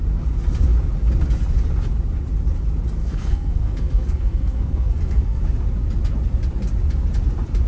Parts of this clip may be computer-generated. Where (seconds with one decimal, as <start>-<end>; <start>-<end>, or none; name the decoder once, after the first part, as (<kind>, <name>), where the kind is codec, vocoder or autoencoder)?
3.0-5.4 (codec, SNAC)